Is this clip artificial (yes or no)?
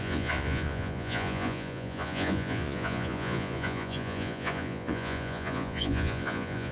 yes